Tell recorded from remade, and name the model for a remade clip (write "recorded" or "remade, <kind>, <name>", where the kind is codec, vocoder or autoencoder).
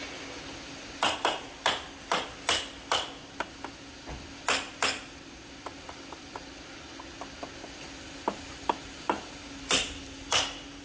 recorded